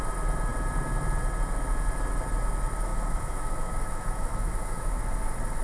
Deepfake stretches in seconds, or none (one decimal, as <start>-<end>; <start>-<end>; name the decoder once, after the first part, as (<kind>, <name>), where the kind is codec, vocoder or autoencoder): 2.9-5.0 (autoencoder, DAC-VAE)